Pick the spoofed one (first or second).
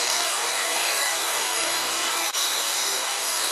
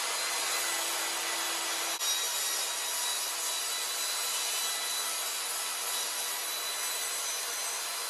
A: first